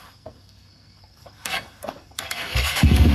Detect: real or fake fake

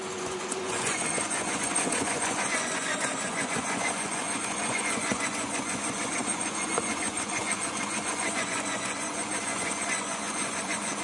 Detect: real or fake fake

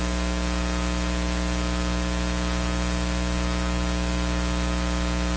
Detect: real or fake real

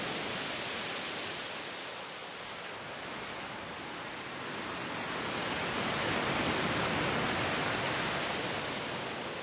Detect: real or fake real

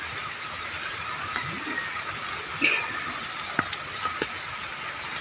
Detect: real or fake real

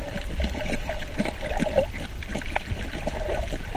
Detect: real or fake fake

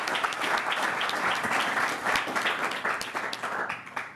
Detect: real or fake real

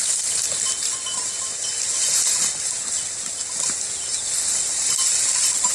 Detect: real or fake real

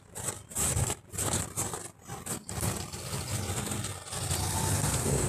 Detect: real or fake real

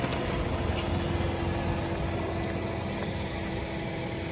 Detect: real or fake real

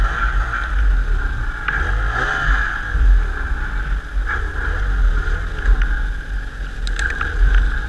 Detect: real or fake real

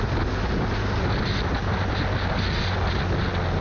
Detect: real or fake real